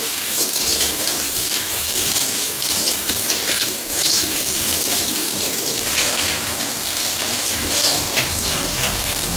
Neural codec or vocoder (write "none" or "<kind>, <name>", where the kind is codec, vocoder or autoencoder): codec, DAC